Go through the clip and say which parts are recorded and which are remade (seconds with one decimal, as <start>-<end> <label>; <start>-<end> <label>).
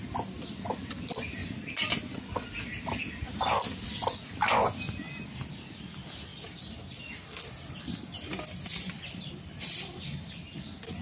0.0-6.3 recorded; 6.3-11.0 remade